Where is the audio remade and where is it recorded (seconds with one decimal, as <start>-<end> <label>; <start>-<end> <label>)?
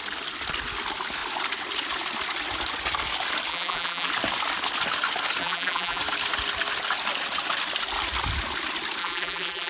0.0-3.5 recorded; 3.5-4.1 remade; 4.1-5.4 recorded; 5.4-6.0 remade; 6.0-9.0 recorded; 9.0-9.7 remade